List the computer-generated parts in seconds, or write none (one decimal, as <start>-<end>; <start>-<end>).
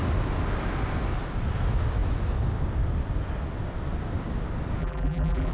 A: 4.8-5.5